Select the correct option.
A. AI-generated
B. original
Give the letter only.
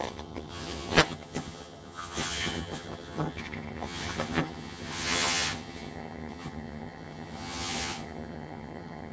A